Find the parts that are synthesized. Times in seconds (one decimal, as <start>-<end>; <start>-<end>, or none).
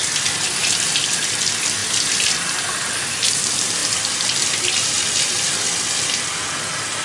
none